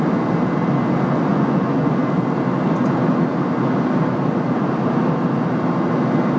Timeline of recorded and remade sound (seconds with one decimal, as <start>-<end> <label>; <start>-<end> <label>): 0.0-1.3 recorded; 1.3-1.9 remade; 1.9-6.4 recorded